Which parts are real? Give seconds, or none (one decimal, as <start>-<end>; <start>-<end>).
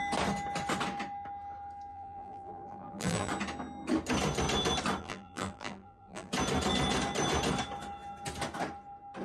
0.0-1.9; 3.3-5.0; 6.3-9.2